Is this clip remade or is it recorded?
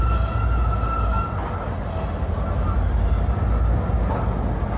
recorded